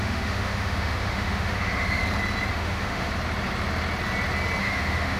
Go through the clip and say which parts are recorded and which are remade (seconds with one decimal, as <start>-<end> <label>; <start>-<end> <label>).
0.0-2.0 remade; 2.0-2.5 recorded; 2.5-3.1 remade; 3.1-4.6 recorded; 4.6-5.2 remade